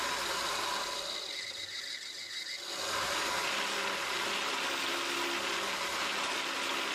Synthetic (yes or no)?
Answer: no